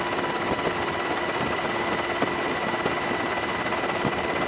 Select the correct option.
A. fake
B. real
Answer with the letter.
B